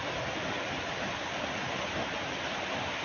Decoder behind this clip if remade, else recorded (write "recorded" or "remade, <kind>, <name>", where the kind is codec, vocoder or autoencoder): recorded